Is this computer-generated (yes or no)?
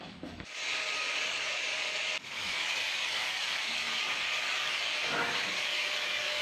yes